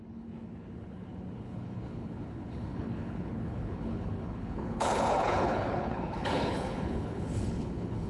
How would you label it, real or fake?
fake